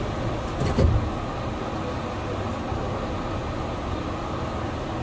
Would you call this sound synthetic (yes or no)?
no